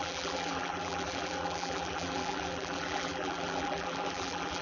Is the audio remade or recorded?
remade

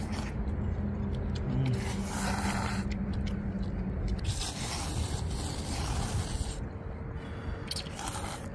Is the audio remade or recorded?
recorded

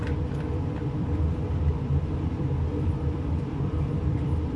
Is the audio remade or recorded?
remade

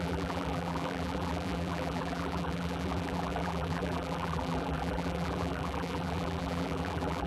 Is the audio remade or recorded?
remade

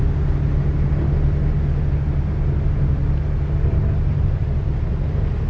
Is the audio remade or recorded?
recorded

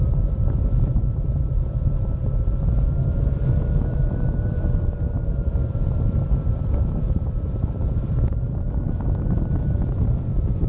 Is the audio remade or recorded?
remade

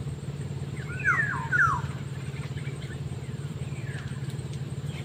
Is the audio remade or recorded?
remade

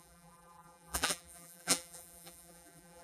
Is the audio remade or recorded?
remade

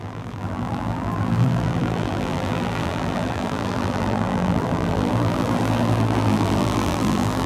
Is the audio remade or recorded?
remade